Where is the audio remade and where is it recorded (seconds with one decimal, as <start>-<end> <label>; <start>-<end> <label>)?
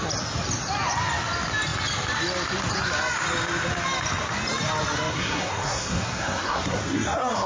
0.0-5.1 recorded; 5.1-7.5 remade